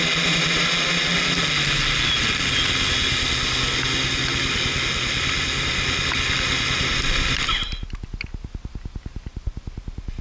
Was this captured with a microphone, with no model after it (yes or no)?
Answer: yes